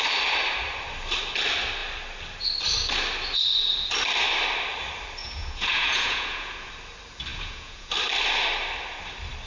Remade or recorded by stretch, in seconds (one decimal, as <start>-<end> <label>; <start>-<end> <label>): 0.0-5.2 recorded; 5.2-6.7 remade; 6.7-7.3 recorded; 7.3-7.9 remade; 7.9-9.5 recorded